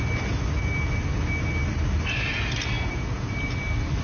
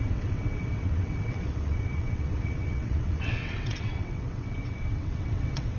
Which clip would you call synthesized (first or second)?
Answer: second